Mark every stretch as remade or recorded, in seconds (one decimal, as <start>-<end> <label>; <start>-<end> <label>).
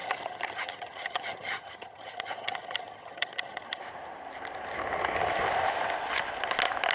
0.0-3.8 remade; 3.8-6.9 recorded